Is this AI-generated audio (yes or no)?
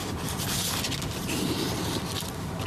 no